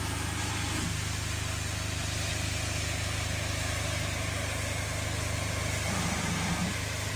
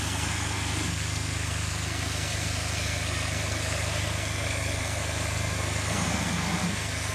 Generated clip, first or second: second